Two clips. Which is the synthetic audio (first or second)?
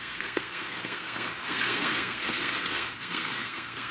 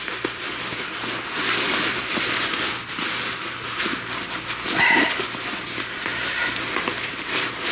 first